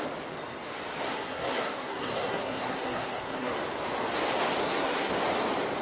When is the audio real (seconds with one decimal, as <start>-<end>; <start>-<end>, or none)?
0.0-1.1; 3.5-4.6; 5.1-5.8